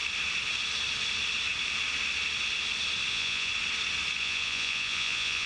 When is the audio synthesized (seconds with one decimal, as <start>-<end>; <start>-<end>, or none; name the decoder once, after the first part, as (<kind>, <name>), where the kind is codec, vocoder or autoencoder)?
3.1-3.5 (vocoder, Vocos); 4.2-5.5